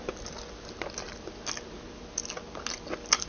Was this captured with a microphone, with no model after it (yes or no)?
yes